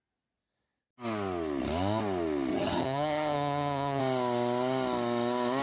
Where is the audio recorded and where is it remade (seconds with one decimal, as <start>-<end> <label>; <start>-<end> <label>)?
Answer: 0.0-2.5 recorded; 2.5-4.0 remade; 4.0-5.6 recorded